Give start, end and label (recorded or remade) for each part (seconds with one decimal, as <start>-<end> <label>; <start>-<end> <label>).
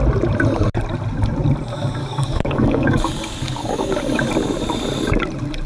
0.0-2.0 recorded; 2.0-4.3 remade; 4.3-5.7 recorded